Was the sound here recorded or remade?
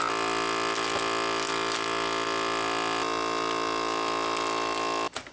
recorded